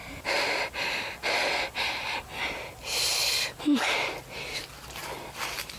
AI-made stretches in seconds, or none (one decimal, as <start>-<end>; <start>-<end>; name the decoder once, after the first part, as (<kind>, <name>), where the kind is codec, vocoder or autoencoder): none